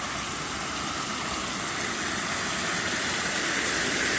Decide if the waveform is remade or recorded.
recorded